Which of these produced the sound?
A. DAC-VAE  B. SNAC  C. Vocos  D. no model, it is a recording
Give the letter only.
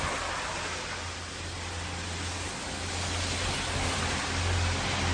D